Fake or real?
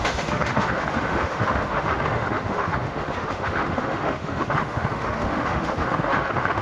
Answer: fake